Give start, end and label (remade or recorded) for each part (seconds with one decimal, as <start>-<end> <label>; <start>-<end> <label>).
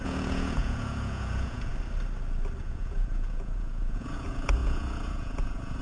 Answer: 0.0-1.7 remade; 1.7-2.6 recorded; 2.6-5.8 remade